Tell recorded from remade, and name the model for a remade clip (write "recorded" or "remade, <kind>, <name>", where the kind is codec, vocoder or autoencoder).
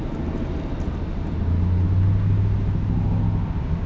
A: recorded